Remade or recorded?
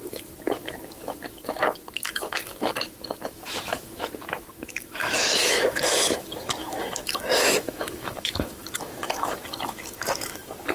remade